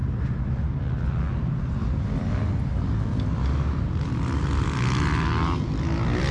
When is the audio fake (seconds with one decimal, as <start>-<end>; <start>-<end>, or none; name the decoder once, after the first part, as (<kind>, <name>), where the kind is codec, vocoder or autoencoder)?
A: none